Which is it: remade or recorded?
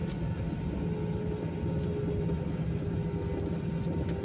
recorded